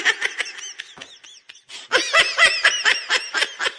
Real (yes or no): yes